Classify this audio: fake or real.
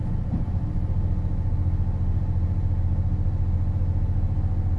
real